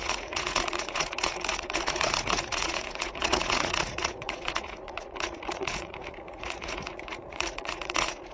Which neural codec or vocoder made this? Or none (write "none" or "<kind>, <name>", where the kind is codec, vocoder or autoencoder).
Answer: vocoder, Vocos